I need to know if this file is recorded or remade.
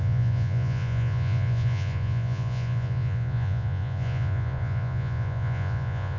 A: remade